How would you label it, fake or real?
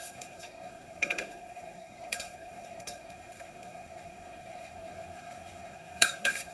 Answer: fake